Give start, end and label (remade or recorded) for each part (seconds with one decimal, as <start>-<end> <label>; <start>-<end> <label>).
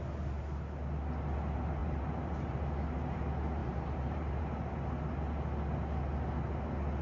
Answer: 0.0-1.8 recorded; 1.8-2.6 remade; 2.6-3.6 recorded; 3.6-4.4 remade; 4.4-7.0 recorded